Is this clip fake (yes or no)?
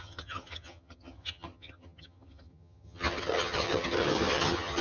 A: yes